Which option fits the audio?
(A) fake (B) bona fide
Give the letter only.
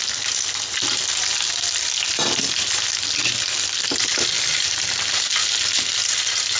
B